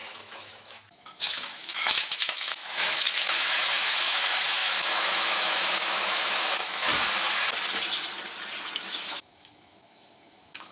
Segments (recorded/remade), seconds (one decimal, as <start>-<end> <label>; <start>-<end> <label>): 0.0-6.9 remade; 6.9-8.8 recorded; 8.8-10.7 remade